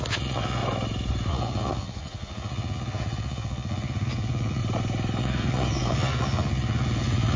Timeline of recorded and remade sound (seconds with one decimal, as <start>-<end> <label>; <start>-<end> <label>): 0.0-0.6 remade; 0.6-1.3 recorded; 1.3-4.6 remade; 4.6-5.2 recorded; 5.2-7.4 remade